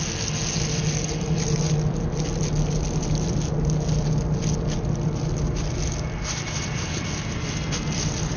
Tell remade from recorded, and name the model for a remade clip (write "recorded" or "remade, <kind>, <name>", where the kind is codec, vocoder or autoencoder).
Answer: recorded